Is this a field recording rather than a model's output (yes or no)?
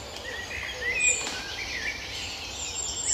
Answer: yes